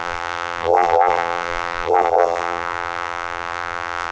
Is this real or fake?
fake